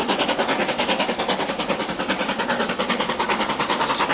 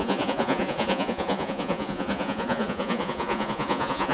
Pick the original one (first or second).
first